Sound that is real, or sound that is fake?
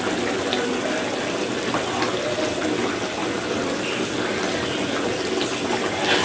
real